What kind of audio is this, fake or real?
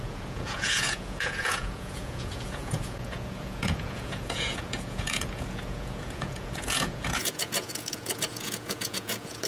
fake